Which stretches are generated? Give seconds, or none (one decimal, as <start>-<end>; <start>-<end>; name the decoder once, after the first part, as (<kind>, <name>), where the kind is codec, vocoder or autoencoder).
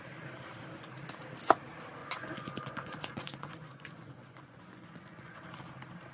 2.0-5.4 (vocoder, Vocos)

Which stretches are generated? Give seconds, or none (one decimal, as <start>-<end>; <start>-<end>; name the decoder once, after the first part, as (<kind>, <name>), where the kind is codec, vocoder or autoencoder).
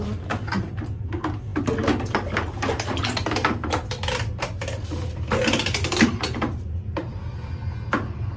none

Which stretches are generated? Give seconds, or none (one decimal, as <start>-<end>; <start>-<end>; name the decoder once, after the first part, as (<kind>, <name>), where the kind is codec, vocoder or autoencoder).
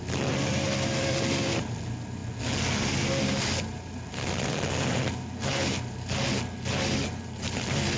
0.0-2.2 (vocoder, BigVGAN v2); 3.4-8.0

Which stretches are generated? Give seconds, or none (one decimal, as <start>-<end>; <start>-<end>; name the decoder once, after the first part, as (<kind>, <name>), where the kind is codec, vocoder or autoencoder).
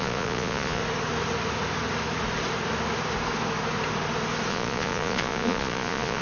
0.0-0.8 (vocoder, Vocos); 4.5-6.2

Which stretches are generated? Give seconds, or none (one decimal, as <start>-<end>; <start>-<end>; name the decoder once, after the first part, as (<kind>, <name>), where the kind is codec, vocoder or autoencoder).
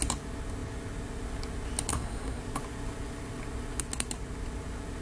1.9-2.4 (codec, SNAC)